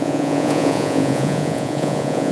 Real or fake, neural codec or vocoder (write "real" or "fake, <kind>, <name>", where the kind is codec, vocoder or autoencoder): fake, vocoder, Vocos